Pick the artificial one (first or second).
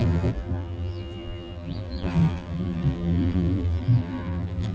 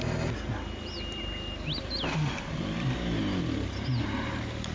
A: first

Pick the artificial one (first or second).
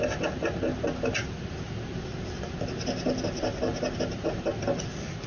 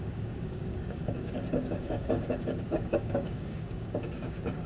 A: second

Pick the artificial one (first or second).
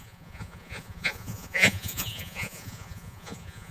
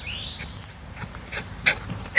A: first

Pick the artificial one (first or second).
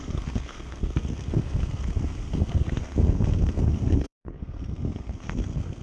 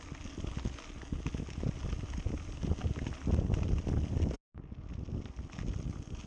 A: first